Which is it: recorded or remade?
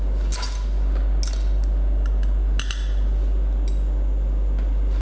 recorded